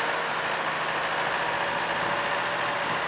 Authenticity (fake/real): real